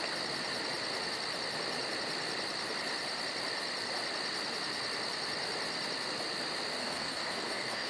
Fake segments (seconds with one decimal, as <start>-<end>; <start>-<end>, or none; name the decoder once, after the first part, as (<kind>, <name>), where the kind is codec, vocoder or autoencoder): 6.8-7.9 (codec, SNAC)